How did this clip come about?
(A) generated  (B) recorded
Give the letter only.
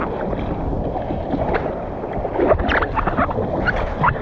B